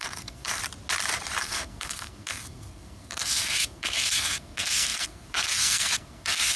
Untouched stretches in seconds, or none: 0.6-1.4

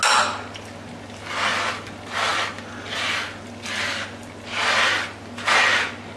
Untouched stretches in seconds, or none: 0.0-6.2

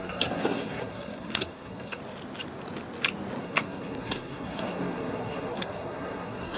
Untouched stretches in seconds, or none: 2.0-3.4

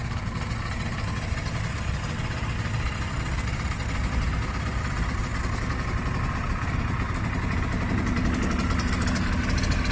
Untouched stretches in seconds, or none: 0.0-9.9